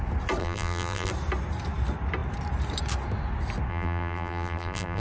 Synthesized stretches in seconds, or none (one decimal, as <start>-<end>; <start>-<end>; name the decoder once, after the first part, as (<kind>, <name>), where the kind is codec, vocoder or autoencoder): 0.4-1.1 (vocoder, BigVGAN v2); 3.7-5.0